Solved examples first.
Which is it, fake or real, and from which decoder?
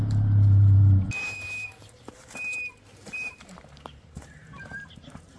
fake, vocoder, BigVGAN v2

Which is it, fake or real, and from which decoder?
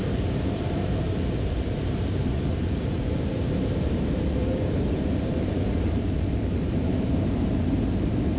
fake, vocoder, BigVGAN v2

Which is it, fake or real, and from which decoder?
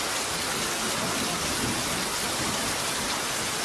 real